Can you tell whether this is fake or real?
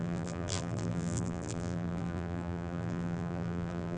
fake